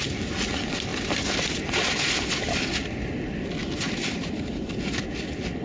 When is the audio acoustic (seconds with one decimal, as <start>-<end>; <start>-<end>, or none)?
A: 0.0-5.6